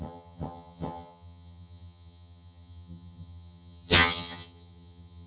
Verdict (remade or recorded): remade